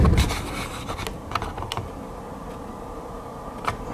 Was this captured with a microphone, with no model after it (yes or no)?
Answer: yes